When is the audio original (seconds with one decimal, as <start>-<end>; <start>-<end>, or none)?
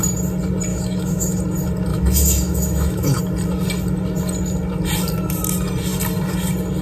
0.0-0.7; 1.4-1.9; 3.2-6.8